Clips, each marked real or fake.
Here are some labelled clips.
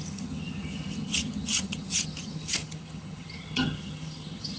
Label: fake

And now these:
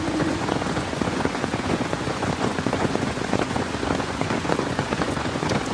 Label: fake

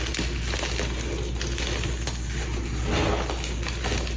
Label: real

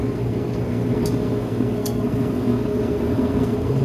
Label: fake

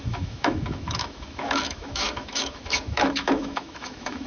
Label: fake